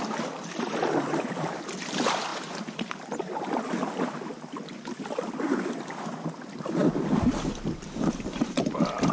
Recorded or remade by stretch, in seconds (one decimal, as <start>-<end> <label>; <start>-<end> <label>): 0.0-2.3 remade; 2.3-6.3 recorded; 6.3-9.1 remade